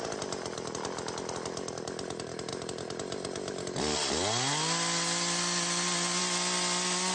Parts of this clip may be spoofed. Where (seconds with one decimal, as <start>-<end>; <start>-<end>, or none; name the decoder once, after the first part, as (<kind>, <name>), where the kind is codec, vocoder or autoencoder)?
none